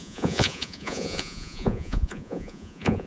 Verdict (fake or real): fake